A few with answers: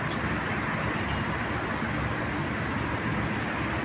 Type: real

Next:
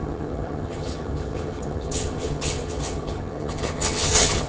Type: fake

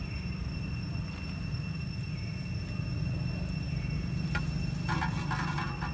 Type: real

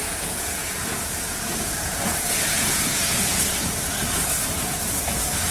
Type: fake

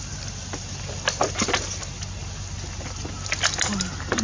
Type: real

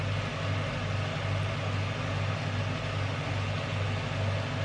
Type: real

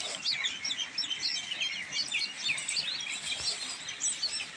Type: real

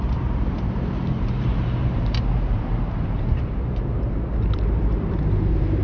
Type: fake